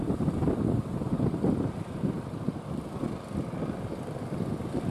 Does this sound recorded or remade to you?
recorded